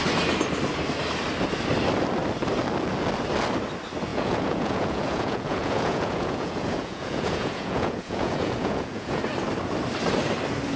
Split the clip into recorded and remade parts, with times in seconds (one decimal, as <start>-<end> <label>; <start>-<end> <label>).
0.0-4.1 recorded; 4.1-9.2 remade; 9.2-10.8 recorded